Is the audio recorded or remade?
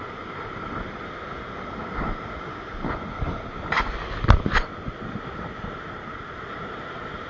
recorded